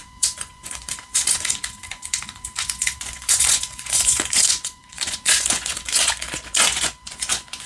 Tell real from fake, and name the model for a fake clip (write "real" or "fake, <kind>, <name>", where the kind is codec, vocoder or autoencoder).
fake, vocoder, Vocos